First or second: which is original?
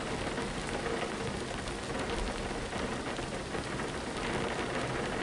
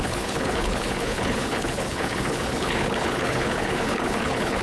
first